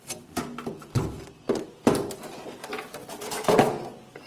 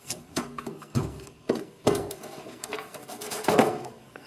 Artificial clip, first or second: second